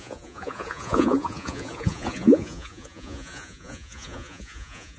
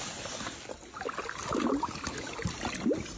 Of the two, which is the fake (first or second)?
first